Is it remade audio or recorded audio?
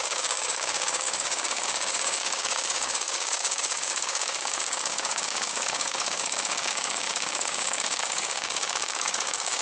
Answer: remade